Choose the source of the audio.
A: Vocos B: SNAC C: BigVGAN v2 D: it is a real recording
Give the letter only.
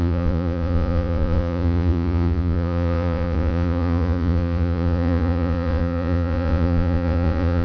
A